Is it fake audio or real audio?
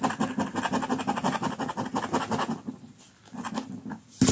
real